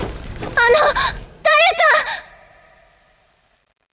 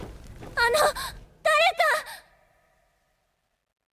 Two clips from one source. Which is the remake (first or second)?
first